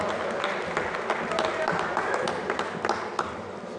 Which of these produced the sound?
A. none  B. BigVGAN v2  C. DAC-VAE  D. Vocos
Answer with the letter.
A